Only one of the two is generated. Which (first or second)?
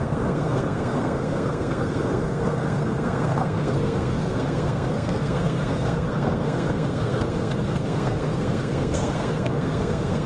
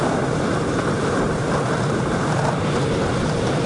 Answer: first